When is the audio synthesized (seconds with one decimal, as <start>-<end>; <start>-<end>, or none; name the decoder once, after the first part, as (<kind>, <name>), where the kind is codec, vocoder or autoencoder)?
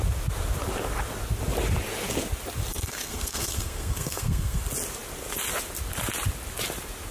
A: 2.7-4.6 (codec, SNAC)